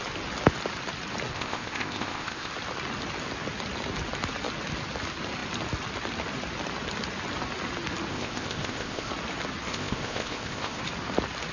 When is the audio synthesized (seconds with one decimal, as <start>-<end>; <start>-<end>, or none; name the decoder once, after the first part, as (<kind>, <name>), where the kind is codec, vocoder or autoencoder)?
1.3-2.5 (codec, ZipCodec); 8.1-9.1; 9.7-10.8